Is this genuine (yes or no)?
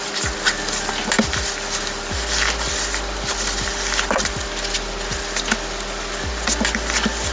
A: yes